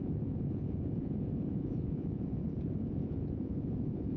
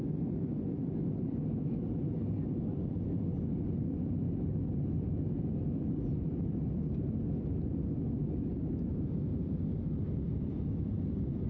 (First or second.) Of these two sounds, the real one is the second